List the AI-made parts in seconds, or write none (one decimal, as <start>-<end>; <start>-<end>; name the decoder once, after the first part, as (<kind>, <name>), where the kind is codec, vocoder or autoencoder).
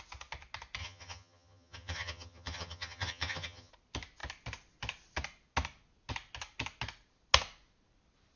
0.8-3.7 (vocoder, HiFi-GAN)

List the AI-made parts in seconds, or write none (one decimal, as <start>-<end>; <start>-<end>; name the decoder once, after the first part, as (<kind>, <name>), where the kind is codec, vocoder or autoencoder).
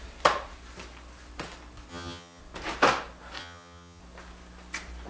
1.9-2.4 (vocoder, HiFi-GAN); 3.4-4.0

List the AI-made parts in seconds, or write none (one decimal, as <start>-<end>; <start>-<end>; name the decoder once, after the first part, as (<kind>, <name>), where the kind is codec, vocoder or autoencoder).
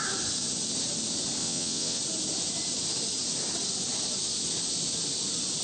1.4-2.0 (vocoder, WaveNeXt)